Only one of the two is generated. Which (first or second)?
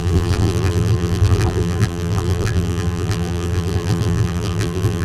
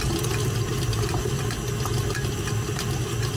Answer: first